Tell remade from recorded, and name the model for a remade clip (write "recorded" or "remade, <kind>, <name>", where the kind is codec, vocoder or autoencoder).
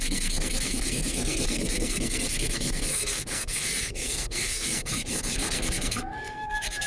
remade, codec, SNAC